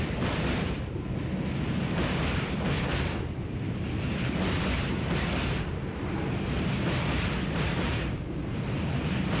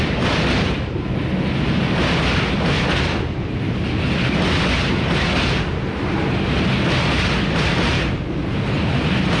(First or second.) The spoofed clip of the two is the first